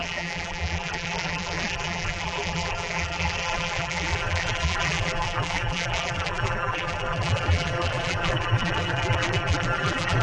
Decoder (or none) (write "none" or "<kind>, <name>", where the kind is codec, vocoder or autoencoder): vocoder, BigVGAN v2